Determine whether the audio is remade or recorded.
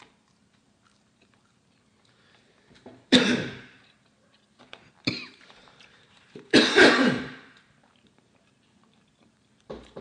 remade